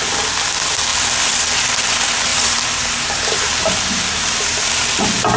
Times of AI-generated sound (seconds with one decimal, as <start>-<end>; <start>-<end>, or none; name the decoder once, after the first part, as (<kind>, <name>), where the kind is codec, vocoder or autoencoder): 2.3-4.8 (vocoder, BigVGAN v2)